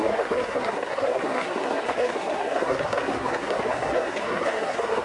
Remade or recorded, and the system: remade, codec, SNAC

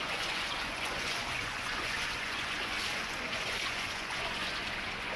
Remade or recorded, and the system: remade, vocoder, Vocos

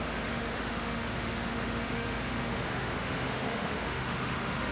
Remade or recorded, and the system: remade, autoencoder, DAC-VAE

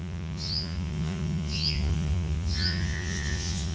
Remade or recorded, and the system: remade, vocoder, Vocos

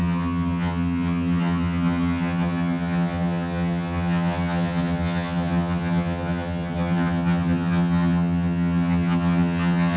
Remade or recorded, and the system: remade, vocoder, HiFi-GAN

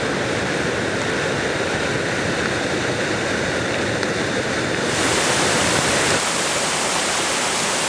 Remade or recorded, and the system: recorded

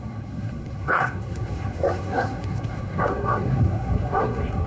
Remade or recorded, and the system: remade, codec, SNAC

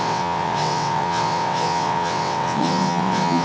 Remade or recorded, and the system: remade, vocoder, WaveNeXt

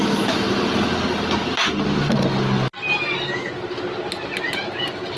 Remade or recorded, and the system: recorded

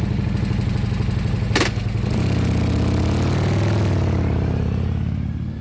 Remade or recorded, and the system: recorded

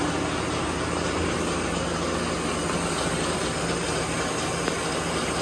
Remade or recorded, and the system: recorded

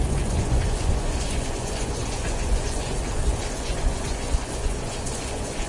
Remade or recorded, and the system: remade, vocoder, Vocos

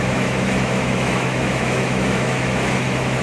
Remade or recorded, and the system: remade, autoencoder, DAC-VAE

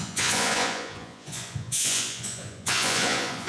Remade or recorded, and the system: remade, vocoder, Vocos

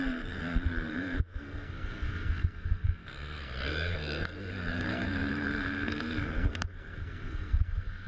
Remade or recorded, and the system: remade, codec, SNAC